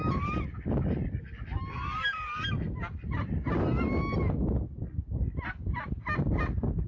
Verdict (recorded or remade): recorded